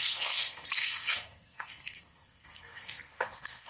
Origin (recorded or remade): remade